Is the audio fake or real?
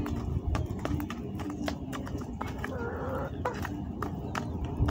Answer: real